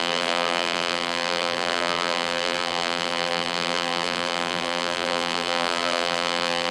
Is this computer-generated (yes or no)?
yes